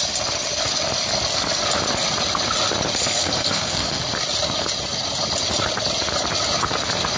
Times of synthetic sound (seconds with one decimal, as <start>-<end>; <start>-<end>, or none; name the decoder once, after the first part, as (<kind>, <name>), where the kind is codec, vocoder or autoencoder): 3.0-4.0 (codec, SNAC)